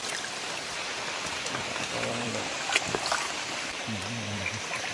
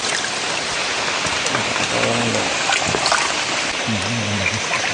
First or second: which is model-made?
first